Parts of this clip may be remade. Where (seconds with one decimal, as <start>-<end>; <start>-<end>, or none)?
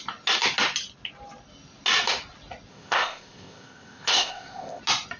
2.7-4.8